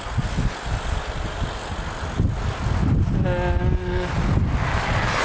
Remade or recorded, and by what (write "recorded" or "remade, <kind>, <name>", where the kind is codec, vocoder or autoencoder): recorded